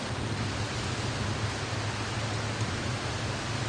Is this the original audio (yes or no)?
yes